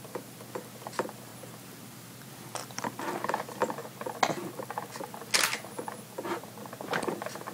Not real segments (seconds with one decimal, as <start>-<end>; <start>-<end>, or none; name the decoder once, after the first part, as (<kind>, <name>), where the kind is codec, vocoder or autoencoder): 0.0-1.3 (vocoder, BigVGAN v2); 1.8-3.8; 5.9-7.5